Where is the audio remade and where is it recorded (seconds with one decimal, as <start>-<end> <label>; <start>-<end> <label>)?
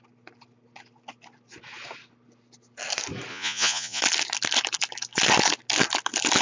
0.0-3.3 recorded; 3.3-4.0 remade; 4.0-6.4 recorded